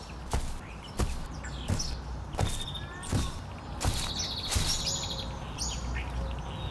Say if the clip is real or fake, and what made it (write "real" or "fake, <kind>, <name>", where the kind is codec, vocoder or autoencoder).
real